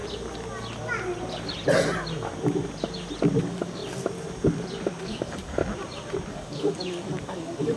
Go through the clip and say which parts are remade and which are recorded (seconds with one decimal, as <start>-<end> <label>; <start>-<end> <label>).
0.0-3.4 recorded; 3.4-3.8 remade; 3.8-5.0 recorded; 5.0-5.6 remade; 5.6-6.3 recorded; 6.3-7.8 remade